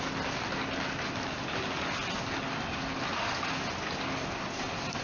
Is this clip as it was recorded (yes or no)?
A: yes